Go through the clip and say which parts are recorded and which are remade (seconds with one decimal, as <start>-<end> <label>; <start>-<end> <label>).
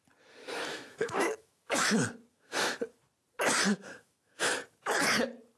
0.0-0.7 recorded; 0.7-1.9 remade; 1.9-2.3 recorded; 2.3-2.8 remade; 2.8-3.7 recorded; 3.7-4.5 remade; 4.5-5.6 recorded